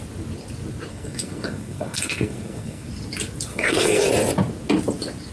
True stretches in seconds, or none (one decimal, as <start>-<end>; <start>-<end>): 0.0-0.9; 2.9-3.5; 4.1-5.3